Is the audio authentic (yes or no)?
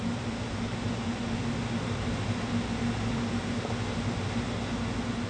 yes